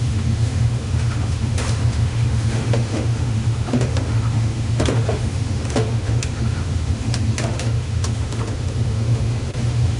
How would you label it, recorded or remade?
remade